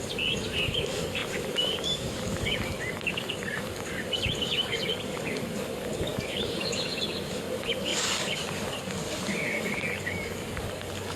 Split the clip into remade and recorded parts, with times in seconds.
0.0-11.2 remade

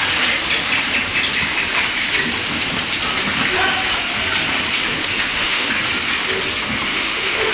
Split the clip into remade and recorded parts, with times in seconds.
0.0-5.0 recorded; 5.0-5.7 remade; 5.7-6.9 recorded; 6.9-7.5 remade